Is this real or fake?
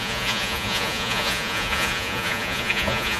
fake